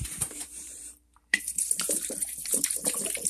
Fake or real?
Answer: fake